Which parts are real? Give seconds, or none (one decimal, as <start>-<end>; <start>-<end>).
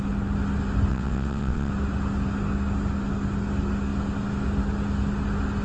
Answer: 0.0-0.9; 1.7-5.6